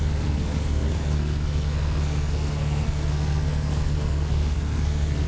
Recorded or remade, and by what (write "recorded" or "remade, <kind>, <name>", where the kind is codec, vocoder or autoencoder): remade, codec, SNAC